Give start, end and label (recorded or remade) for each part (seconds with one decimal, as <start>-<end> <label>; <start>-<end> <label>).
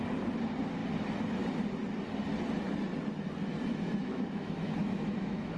0.0-4.0 recorded; 4.0-5.6 remade